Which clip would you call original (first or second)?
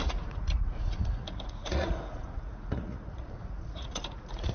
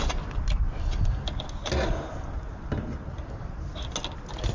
second